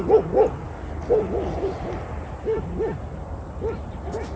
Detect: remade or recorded recorded